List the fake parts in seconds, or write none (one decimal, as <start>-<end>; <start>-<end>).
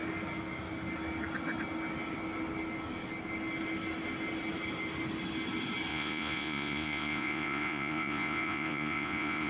5.9-9.5